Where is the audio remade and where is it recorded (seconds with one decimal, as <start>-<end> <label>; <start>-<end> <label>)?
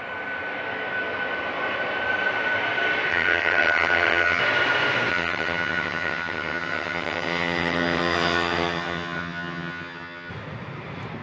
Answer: 0.0-3.1 recorded; 3.1-4.4 remade; 4.4-5.1 recorded; 5.1-10.3 remade; 10.3-11.2 recorded